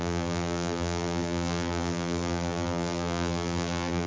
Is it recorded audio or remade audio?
remade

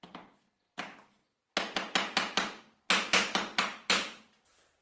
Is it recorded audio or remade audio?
recorded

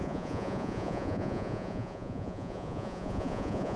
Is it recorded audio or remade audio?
remade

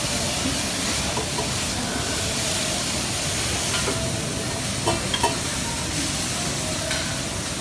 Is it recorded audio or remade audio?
recorded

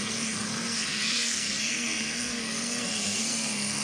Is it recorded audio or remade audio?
remade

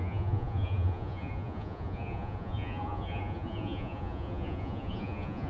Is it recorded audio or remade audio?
remade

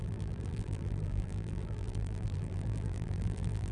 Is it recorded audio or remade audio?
remade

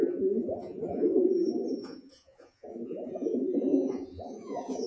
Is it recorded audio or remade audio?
remade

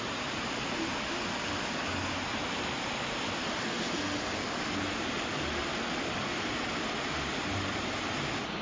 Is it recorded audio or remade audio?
recorded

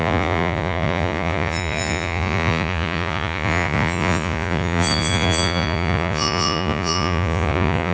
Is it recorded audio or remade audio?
remade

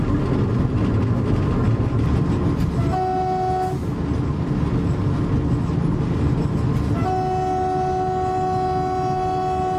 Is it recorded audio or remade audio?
recorded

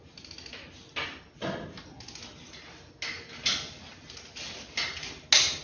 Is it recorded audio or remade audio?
recorded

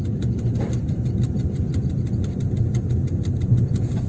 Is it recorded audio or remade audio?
remade